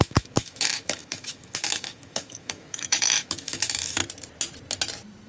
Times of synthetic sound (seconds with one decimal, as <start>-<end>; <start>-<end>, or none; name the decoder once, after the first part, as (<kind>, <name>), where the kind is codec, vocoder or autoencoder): 0.0-4.0 (autoencoder, DAC-VAE)